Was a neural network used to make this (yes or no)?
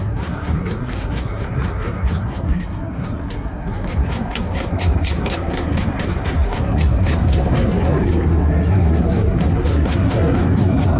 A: yes